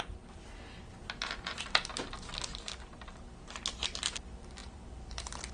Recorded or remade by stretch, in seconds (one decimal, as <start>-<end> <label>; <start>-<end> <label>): 0.0-4.6 recorded; 4.6-5.5 remade